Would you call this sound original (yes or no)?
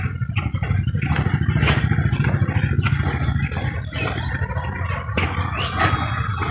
yes